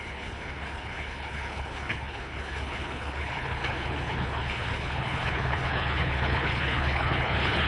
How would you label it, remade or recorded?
remade